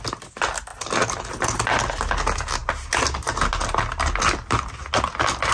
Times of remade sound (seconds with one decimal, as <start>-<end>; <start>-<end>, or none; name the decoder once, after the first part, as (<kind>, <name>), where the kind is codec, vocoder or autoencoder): none